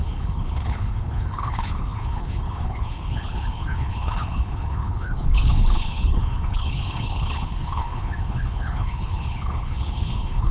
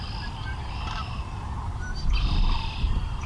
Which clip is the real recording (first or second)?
second